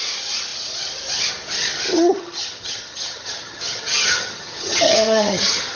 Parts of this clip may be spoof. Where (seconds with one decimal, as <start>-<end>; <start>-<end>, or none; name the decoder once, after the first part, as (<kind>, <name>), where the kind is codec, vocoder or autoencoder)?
1.9-5.8 (vocoder, HiFi-GAN)